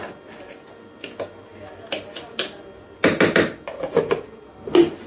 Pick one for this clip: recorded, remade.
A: recorded